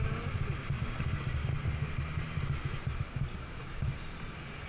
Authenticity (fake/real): real